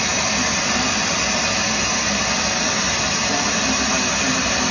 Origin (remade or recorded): recorded